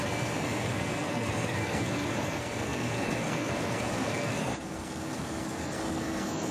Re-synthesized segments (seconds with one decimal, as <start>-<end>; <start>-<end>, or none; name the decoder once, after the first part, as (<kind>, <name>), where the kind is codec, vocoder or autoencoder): 0.0-6.5 (codec, SNAC)